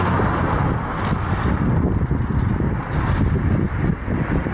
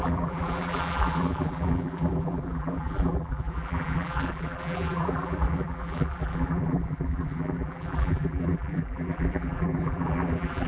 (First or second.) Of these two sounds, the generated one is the second